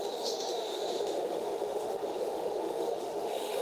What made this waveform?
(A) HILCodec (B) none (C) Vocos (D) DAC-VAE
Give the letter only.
D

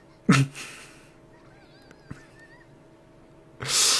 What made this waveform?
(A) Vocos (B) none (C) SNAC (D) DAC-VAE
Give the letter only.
B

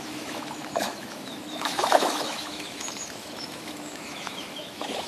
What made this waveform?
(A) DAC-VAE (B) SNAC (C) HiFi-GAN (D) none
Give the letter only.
A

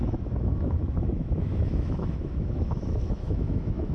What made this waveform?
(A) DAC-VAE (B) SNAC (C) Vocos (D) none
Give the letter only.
A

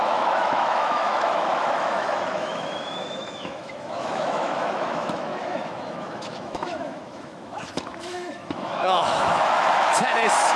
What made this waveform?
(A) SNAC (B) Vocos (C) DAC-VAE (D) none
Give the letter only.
C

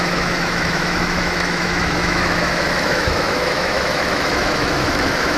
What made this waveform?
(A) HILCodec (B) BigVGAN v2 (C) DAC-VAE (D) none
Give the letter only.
C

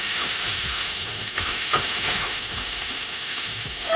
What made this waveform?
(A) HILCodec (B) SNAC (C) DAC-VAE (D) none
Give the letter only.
C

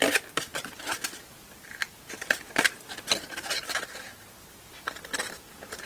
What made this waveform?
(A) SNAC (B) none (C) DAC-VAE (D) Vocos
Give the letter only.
B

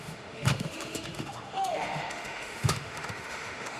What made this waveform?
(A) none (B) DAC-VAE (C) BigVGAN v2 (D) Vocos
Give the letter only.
B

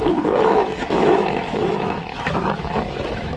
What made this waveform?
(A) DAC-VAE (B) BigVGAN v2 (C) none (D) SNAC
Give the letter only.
A